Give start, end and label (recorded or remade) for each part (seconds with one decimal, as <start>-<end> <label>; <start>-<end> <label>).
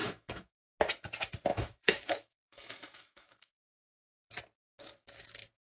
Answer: 0.0-0.7 remade; 0.7-1.5 recorded; 1.5-4.3 remade; 4.3-5.7 recorded